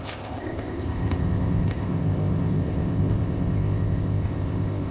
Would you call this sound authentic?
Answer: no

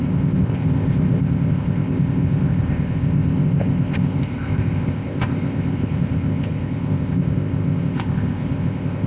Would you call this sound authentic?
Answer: no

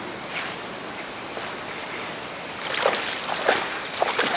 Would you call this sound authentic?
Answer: yes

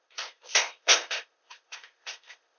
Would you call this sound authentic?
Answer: no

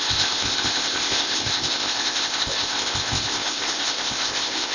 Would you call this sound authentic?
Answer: no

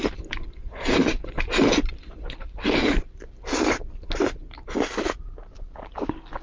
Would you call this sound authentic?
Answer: yes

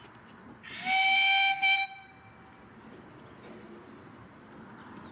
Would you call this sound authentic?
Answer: yes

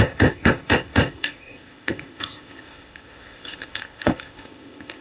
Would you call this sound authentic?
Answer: no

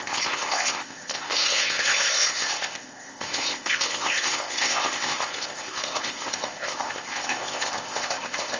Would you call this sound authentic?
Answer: no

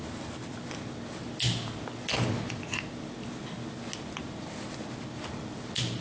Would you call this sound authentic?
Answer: yes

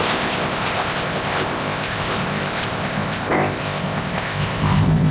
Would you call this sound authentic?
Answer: no